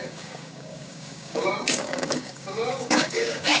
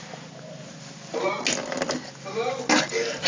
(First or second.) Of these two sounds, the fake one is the first